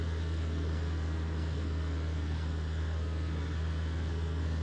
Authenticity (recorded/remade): remade